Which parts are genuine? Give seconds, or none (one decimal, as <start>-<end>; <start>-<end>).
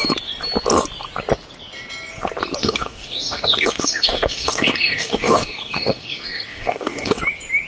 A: 0.0-2.6; 7.2-7.7